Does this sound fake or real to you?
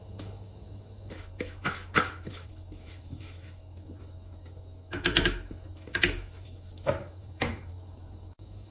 fake